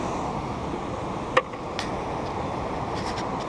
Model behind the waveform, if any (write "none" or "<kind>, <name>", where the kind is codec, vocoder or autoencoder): none